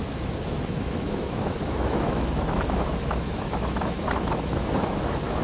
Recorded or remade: remade